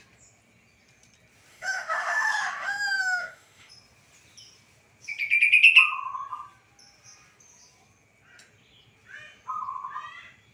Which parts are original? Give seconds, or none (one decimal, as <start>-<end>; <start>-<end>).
0.0-1.5; 3.7-10.5